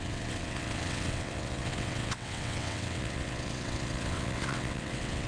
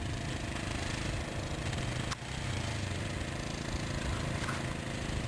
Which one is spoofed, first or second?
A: first